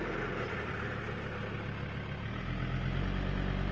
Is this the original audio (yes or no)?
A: yes